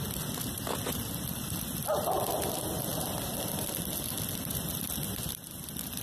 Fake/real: real